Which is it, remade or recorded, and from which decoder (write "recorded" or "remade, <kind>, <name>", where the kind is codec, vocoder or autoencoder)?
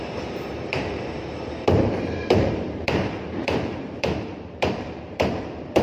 remade, vocoder, BigVGAN v2